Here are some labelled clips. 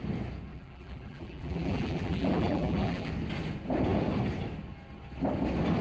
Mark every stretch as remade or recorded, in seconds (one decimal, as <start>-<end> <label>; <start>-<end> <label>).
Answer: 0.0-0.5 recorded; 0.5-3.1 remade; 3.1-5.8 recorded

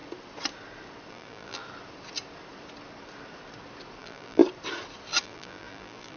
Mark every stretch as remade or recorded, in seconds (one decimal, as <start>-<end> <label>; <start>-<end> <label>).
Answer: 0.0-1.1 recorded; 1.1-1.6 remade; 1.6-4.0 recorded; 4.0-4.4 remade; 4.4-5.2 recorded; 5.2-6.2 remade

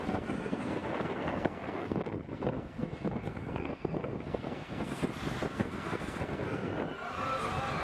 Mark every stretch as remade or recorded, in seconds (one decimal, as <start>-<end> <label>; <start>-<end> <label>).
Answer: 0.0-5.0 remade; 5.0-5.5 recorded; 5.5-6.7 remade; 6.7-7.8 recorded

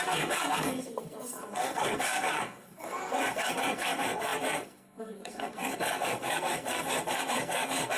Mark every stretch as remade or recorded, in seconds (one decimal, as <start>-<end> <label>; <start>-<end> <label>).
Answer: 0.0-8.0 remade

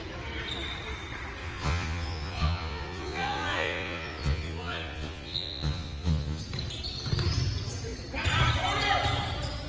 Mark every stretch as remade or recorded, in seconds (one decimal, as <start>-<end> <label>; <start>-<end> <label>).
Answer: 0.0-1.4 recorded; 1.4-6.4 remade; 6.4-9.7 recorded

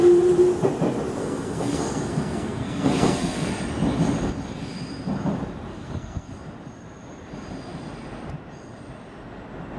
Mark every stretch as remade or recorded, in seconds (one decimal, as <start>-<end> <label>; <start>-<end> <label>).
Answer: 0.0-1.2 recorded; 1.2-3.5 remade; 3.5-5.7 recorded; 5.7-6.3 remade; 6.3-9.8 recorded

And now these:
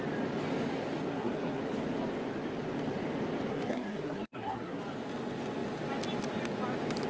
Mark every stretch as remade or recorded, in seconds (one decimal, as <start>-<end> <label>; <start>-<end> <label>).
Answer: 0.0-1.1 recorded; 1.1-1.6 remade; 1.6-3.5 recorded; 3.5-4.8 remade; 4.8-7.1 recorded

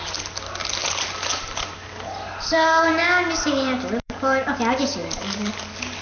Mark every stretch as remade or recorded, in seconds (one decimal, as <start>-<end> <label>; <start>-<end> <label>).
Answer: 0.0-0.8 recorded; 0.8-4.4 remade; 4.4-5.0 recorded; 5.0-5.6 remade; 5.6-6.0 recorded